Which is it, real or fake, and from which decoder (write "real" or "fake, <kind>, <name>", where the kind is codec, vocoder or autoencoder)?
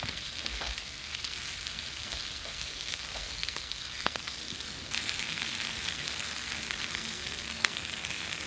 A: fake, codec, SNAC